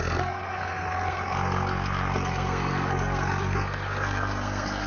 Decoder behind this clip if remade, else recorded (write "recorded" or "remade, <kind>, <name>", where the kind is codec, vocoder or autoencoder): remade, codec, SNAC